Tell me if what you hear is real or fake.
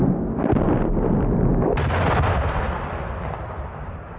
real